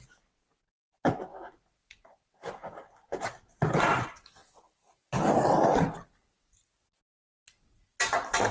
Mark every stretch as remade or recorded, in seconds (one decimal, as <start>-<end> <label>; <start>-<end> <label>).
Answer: 0.0-8.5 recorded